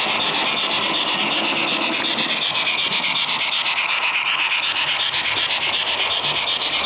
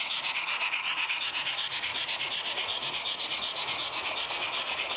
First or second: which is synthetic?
second